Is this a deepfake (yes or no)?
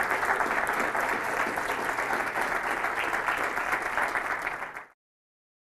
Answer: no